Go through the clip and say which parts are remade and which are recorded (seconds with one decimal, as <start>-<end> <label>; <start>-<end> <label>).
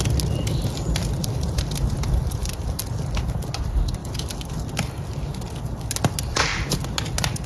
0.0-1.2 recorded; 1.2-3.2 remade; 3.2-4.0 recorded; 4.0-4.6 remade; 4.6-7.5 recorded